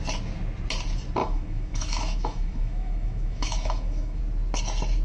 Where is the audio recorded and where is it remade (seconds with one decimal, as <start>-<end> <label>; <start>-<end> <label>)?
0.0-1.2 recorded; 1.2-4.2 remade; 4.2-5.0 recorded